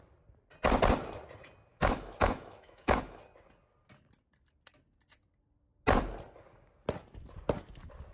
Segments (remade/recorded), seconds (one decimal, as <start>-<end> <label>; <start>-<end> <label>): 0.0-1.7 recorded; 1.7-3.2 remade; 3.2-8.1 recorded